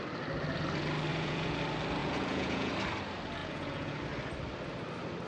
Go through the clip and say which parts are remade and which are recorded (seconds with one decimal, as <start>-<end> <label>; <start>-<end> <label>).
0.0-1.1 recorded; 1.1-1.6 remade; 1.6-2.0 recorded; 2.0-2.7 remade; 2.7-3.4 recorded; 3.4-4.0 remade; 4.0-5.3 recorded

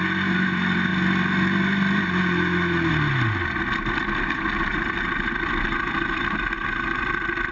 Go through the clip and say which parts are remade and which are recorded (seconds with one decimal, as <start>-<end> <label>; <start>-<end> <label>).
0.0-7.5 recorded

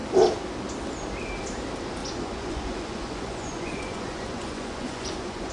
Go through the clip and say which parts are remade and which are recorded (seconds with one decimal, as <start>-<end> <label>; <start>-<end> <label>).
0.0-2.0 recorded; 2.0-5.5 remade